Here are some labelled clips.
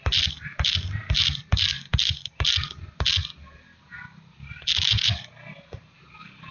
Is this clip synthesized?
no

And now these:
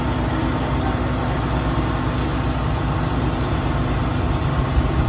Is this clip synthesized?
no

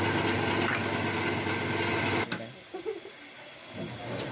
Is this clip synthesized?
no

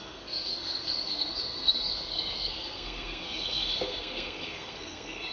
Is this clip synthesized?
yes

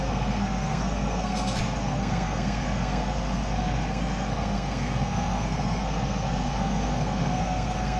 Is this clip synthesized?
yes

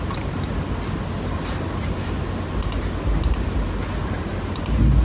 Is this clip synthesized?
no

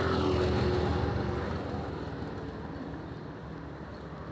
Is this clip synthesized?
no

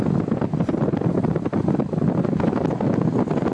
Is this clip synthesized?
no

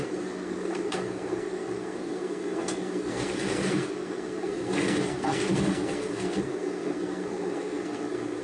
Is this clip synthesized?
yes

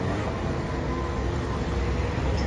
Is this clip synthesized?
no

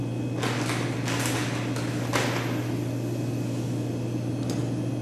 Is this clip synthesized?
no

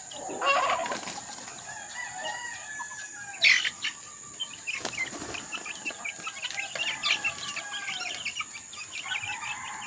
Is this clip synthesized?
no